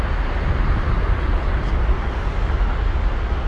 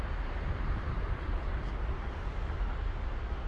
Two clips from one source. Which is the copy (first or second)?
second